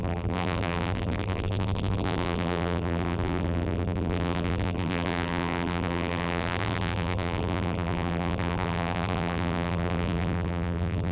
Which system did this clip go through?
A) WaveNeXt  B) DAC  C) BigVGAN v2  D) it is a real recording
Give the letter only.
C